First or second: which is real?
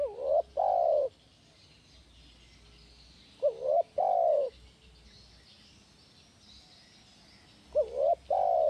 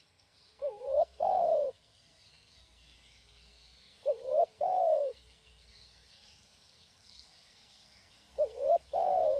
first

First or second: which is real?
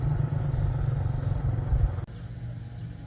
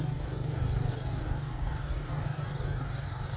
first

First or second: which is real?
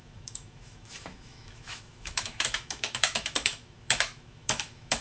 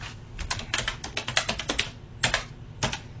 second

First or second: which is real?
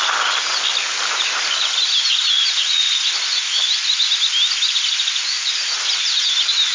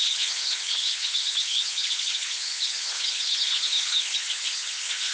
first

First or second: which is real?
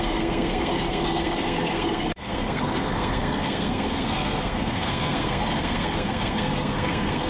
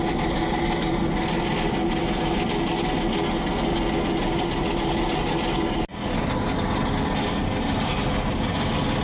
second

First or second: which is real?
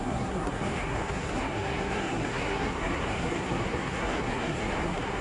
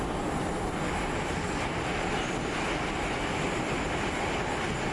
second